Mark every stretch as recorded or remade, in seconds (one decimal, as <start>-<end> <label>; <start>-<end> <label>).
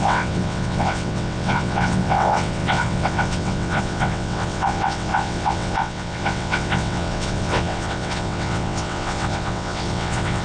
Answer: 0.0-10.4 remade